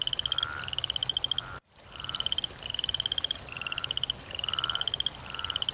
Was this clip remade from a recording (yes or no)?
no